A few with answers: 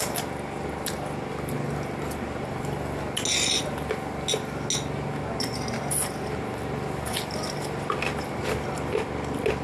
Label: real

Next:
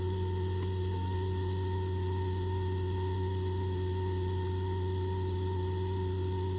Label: real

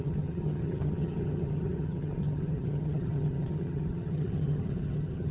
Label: fake